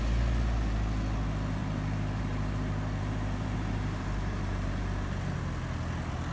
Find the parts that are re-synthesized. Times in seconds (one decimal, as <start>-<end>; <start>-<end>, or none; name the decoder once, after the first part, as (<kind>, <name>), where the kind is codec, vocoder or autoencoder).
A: 1.6-5.4 (vocoder, BigVGAN v2)